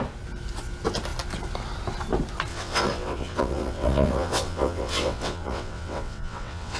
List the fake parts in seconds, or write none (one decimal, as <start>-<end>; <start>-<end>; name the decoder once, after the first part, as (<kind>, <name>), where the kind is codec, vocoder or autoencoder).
2.5-6.8 (vocoder, WaveNeXt)